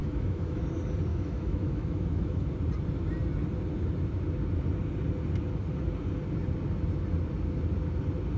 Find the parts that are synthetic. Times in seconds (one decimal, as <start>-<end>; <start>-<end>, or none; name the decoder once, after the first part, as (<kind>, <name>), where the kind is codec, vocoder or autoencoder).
0.0-0.6 (autoencoder, DAC-VAE); 1.1-2.5